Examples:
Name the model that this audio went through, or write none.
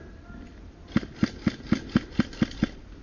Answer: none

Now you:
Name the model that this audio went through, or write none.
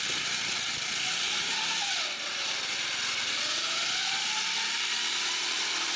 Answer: none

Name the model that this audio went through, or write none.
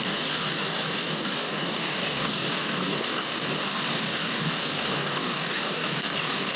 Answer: codec, DAC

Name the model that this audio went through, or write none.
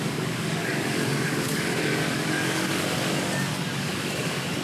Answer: codec, DAC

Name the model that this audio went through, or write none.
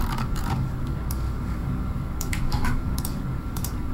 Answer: codec, DAC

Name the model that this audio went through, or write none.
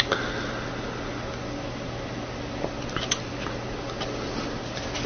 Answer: none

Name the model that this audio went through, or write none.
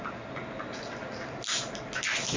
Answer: none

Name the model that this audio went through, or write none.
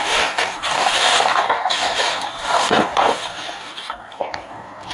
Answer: codec, DAC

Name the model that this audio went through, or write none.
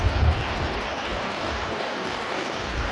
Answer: codec, DAC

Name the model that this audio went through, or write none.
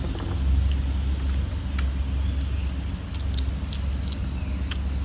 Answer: none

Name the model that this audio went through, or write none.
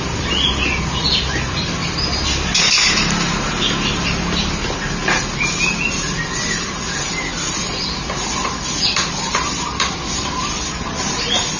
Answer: none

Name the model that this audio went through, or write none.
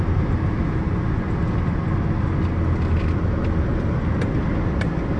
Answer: none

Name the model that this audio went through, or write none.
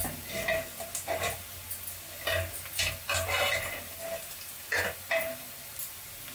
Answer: none